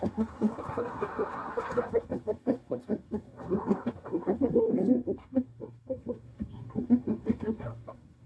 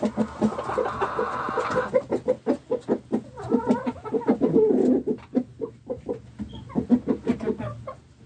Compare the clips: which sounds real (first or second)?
second